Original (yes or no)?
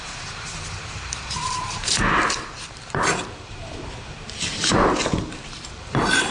no